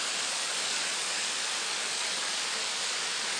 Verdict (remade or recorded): remade